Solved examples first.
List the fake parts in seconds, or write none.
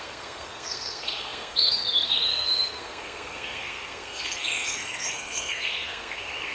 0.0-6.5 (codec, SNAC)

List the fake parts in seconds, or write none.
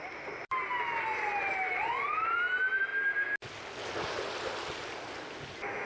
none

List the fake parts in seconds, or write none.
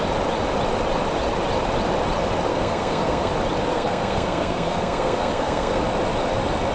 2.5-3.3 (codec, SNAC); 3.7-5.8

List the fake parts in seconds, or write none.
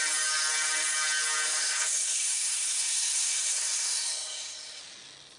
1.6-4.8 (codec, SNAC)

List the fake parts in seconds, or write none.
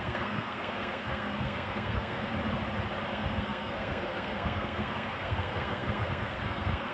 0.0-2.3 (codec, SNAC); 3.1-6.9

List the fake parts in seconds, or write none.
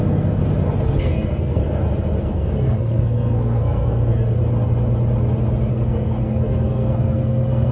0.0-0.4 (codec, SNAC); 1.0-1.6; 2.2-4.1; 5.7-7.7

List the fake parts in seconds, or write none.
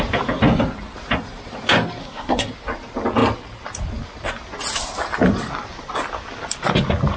2.0-2.5 (codec, SNAC)